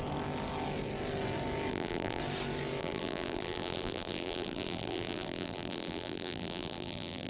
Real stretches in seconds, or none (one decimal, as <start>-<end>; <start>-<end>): 0.0-1.7; 2.2-2.8